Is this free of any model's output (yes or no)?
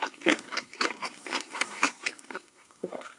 no